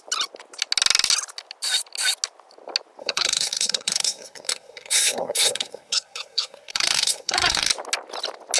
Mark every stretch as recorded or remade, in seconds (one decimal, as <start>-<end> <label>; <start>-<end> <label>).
0.0-3.0 recorded; 3.0-7.7 remade; 7.7-8.6 recorded

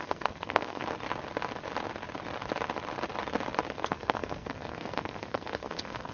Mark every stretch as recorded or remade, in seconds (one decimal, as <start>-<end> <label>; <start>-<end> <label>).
0.0-0.8 remade; 0.8-3.7 recorded; 3.7-6.1 remade

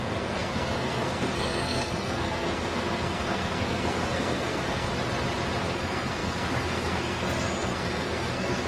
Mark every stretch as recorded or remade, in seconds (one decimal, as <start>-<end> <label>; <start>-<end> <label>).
0.0-4.9 remade; 4.9-5.6 recorded; 5.6-8.7 remade

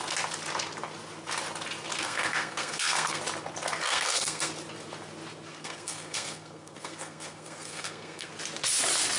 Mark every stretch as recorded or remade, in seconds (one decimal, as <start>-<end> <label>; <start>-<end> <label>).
0.0-2.0 recorded; 2.0-3.2 remade; 3.2-3.8 recorded; 3.8-4.5 remade; 4.5-5.5 recorded; 5.5-8.3 remade; 8.3-9.2 recorded

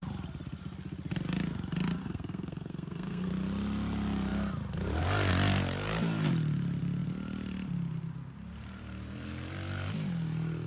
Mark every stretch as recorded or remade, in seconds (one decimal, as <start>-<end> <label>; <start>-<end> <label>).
0.0-2.0 recorded; 2.0-3.3 remade; 3.3-10.7 recorded